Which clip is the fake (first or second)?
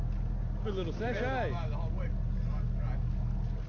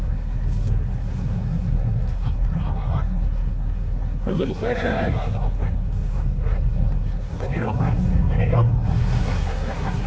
second